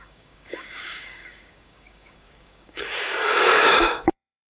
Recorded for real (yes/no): no